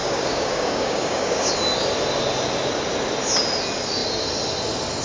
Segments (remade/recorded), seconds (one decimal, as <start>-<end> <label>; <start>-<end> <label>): 0.0-1.5 remade; 1.5-5.0 recorded